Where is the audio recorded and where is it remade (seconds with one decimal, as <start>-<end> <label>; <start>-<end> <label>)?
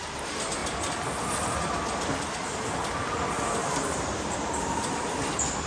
0.0-3.6 recorded; 3.6-5.2 remade; 5.2-5.7 recorded